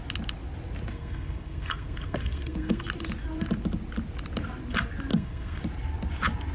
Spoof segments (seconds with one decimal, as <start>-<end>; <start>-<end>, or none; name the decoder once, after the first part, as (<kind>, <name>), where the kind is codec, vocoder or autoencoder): 0.9-2.8 (codec, SNAC); 5.1-5.6